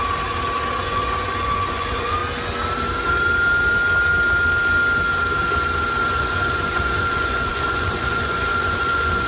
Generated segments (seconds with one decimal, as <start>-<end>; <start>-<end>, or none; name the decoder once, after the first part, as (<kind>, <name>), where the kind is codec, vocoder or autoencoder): 0.8-2.2 (vocoder, Vocos); 6.0-9.3